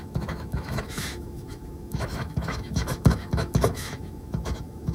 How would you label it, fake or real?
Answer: fake